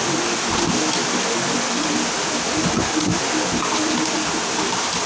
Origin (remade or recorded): recorded